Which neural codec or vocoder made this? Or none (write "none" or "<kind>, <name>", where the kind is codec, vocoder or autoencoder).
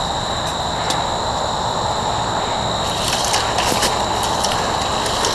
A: none